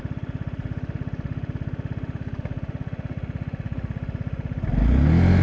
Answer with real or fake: real